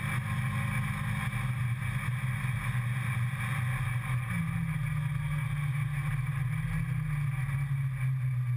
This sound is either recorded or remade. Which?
recorded